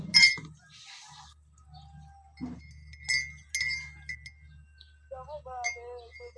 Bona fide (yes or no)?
yes